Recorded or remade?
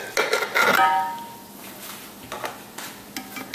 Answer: recorded